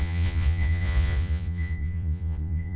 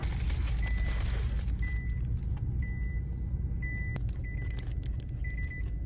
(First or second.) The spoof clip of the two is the first